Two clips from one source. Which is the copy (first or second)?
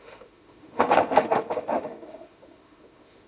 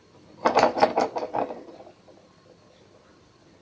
first